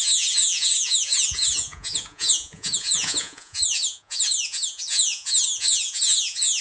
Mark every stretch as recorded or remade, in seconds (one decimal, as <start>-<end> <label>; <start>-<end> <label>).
0.0-6.6 remade

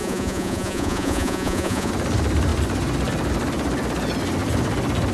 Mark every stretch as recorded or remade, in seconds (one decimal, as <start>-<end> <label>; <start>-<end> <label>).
0.0-1.9 remade; 1.9-5.1 recorded

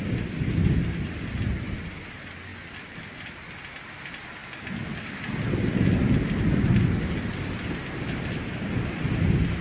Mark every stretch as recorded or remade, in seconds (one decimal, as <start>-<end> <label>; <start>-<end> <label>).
0.0-9.6 recorded

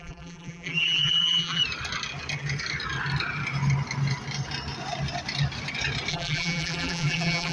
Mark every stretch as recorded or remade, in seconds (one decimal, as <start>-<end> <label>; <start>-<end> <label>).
0.0-1.6 remade; 1.6-6.1 recorded; 6.1-7.5 remade

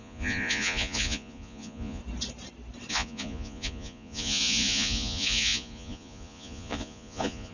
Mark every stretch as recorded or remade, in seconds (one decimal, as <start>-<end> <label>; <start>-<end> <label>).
0.0-2.0 remade; 2.0-2.9 recorded; 2.9-7.5 remade

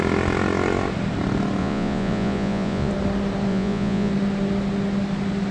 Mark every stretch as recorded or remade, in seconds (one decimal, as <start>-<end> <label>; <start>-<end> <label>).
0.0-1.6 recorded; 1.6-2.9 remade; 2.9-3.5 recorded; 3.5-4.1 remade; 4.1-5.5 recorded

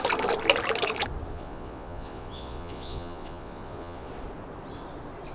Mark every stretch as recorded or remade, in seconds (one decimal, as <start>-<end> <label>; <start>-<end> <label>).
0.0-1.3 recorded; 1.3-4.1 remade; 4.1-5.3 recorded

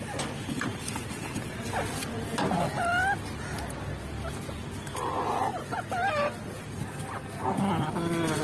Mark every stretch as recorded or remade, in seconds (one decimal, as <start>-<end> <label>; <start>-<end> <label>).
0.0-0.7 recorded; 0.7-1.7 remade; 1.7-5.5 recorded; 5.5-6.8 remade; 6.8-8.4 recorded